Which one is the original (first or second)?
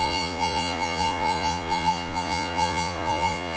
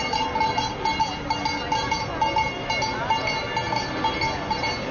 second